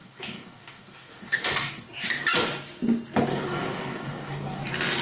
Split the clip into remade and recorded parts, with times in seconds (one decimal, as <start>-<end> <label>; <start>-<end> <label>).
0.0-1.8 remade; 1.8-3.3 recorded; 3.3-4.6 remade; 4.6-5.0 recorded

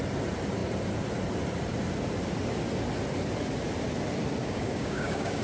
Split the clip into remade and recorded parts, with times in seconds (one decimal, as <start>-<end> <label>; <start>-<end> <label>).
0.0-4.4 recorded; 4.4-5.4 remade

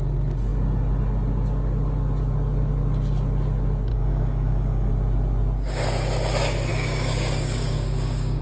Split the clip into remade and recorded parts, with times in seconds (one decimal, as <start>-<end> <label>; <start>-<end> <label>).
0.0-3.9 recorded; 3.9-4.9 remade; 4.9-6.7 recorded; 6.7-8.4 remade

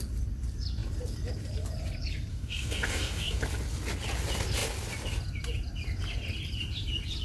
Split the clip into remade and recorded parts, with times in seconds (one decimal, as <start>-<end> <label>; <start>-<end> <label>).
0.0-2.3 recorded; 2.3-3.4 remade; 3.4-7.2 recorded